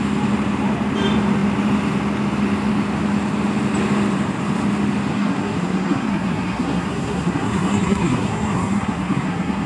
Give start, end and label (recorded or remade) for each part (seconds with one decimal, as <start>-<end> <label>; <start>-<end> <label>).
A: 0.0-5.1 recorded; 5.1-9.7 remade